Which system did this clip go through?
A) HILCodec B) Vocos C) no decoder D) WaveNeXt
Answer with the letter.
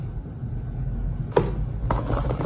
C